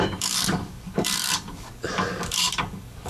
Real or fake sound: fake